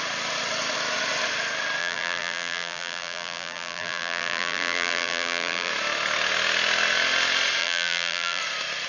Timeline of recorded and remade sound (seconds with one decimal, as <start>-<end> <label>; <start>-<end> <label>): 0.0-1.8 recorded; 1.8-5.7 remade; 5.7-7.6 recorded; 7.6-8.4 remade; 8.4-8.9 recorded